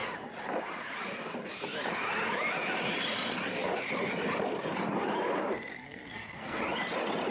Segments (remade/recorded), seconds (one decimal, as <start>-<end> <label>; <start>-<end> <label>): 0.0-5.7 recorded; 5.7-6.6 remade; 6.6-7.3 recorded